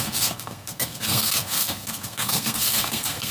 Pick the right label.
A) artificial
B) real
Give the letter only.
A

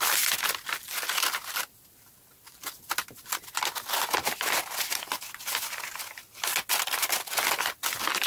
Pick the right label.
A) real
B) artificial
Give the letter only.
A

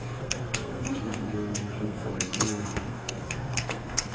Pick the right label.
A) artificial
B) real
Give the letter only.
A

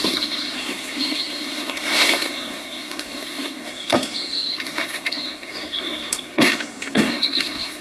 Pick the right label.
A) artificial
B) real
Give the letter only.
A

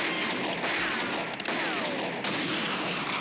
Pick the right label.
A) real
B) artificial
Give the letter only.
A